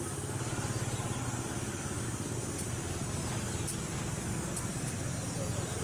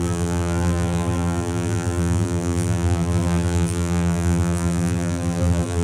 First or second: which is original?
first